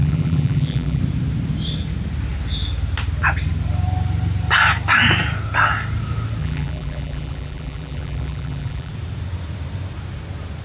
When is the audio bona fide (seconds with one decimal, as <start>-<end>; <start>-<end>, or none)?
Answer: 1.0-6.4; 8.9-10.6